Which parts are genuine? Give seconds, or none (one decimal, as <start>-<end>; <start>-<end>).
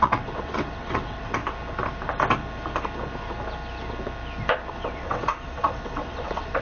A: 1.4-4.7